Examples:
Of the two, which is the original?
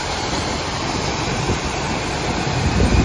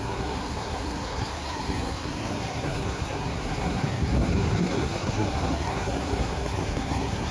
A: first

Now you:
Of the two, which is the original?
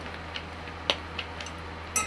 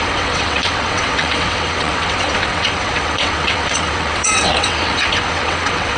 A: first